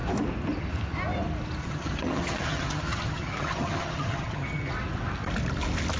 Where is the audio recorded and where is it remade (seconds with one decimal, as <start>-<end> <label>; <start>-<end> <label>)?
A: 0.0-1.6 recorded; 1.6-4.7 remade; 4.7-6.0 recorded

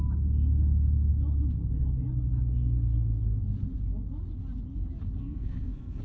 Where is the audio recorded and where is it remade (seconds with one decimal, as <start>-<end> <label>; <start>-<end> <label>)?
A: 0.0-5.2 recorded; 5.2-6.0 remade

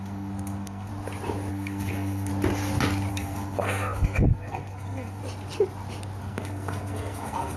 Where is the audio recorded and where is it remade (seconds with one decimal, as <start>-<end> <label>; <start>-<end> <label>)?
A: 0.0-0.9 remade; 0.9-1.5 recorded; 1.5-2.3 remade; 2.3-3.1 recorded; 3.1-5.2 remade; 5.2-6.2 recorded; 6.2-7.6 remade

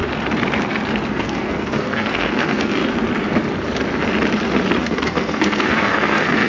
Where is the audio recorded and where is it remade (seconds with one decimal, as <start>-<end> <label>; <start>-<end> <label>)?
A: 0.0-1.1 recorded; 1.1-2.8 remade; 2.8-4.8 recorded; 4.8-6.5 remade